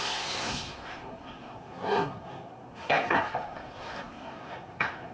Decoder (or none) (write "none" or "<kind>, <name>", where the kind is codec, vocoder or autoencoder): codec, SNAC